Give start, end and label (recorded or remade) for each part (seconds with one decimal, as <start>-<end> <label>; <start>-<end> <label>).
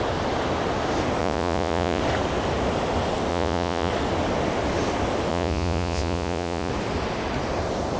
0.0-1.2 recorded; 1.2-2.0 remade; 2.0-3.3 recorded; 3.3-3.9 remade; 3.9-5.3 recorded; 5.3-6.7 remade; 6.7-8.0 recorded